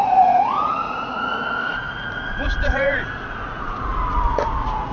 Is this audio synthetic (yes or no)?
yes